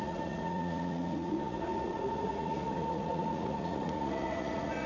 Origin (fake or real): fake